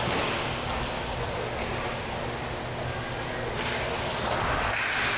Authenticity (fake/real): real